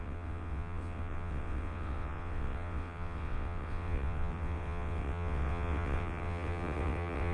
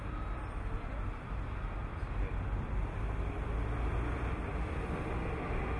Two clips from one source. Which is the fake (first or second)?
first